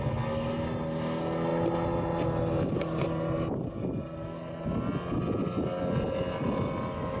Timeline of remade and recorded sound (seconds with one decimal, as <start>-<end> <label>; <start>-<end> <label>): 0.0-7.2 recorded